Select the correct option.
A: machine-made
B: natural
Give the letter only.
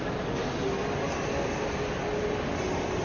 B